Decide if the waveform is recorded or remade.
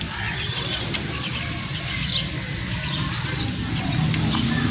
recorded